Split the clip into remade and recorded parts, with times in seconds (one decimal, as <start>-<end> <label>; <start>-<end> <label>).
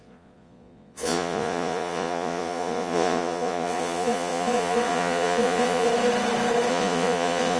0.0-5.9 remade; 5.9-6.7 recorded; 6.7-7.6 remade